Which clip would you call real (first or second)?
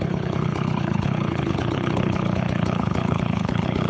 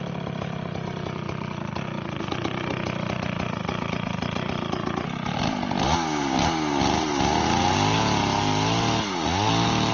second